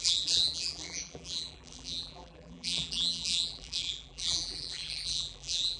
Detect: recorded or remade remade